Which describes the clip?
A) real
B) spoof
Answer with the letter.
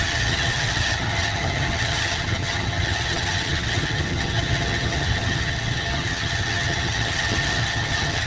B